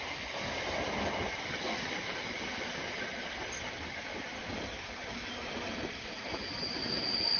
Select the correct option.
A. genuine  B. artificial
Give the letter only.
B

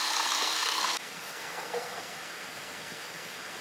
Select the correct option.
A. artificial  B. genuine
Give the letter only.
A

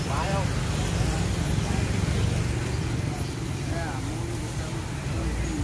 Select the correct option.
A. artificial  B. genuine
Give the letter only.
B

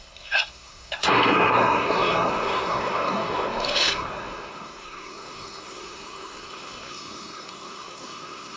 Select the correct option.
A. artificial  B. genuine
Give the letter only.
A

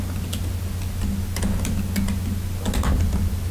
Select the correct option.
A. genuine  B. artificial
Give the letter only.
A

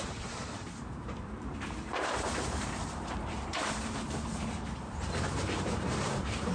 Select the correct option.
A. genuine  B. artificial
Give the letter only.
B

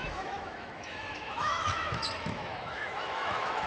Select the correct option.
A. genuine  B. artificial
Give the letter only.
B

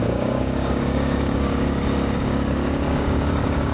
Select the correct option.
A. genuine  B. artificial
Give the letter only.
B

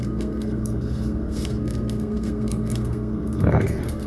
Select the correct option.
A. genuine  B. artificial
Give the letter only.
B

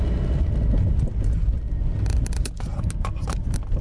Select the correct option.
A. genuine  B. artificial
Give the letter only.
A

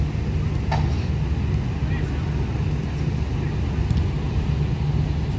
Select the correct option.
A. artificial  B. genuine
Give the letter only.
B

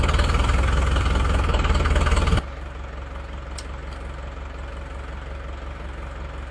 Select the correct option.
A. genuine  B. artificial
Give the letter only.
A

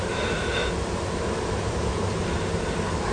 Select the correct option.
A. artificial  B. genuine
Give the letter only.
A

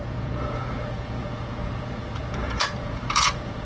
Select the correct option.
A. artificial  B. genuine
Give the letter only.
A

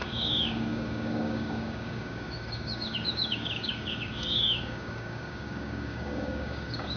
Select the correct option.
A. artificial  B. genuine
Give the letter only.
A